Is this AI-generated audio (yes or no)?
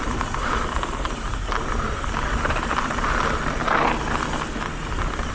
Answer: no